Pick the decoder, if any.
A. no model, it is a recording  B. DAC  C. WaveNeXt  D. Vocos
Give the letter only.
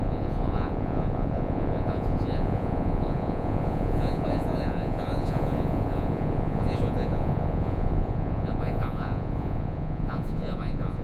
D